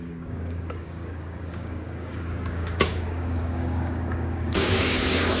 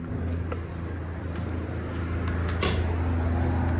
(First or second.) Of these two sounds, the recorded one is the second